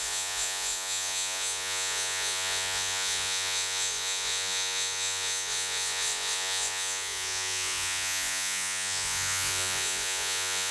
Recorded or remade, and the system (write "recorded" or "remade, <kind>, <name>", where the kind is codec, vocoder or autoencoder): remade, vocoder, Vocos